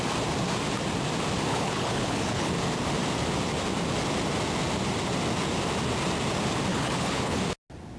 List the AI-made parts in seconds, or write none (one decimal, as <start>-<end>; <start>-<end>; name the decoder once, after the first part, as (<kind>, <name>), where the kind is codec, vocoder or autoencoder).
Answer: 1.5-2.5 (codec, HILCodec); 6.7-7.4